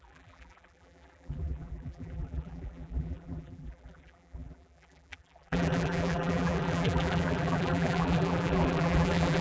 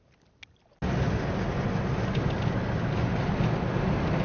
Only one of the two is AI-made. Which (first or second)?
first